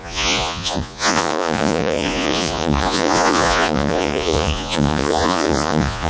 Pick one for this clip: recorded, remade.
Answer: remade